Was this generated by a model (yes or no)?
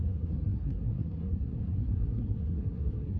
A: yes